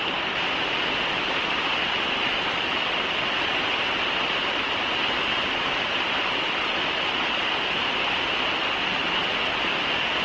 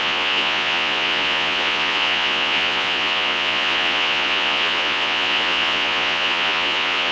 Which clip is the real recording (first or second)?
first